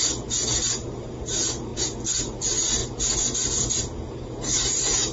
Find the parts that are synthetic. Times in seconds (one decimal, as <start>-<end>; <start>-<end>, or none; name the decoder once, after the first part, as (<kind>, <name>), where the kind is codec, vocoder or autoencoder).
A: 0.0-1.7 (vocoder, BigVGAN v2); 2.4-2.8; 4.5-5.1